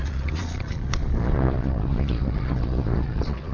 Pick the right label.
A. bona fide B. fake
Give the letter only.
B